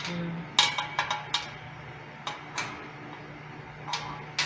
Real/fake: real